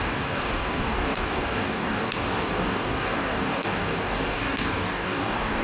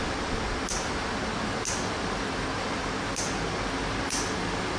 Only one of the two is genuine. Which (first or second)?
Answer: second